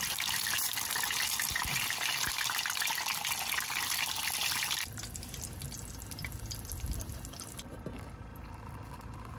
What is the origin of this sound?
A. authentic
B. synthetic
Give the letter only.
A